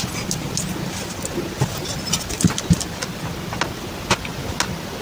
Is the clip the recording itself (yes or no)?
yes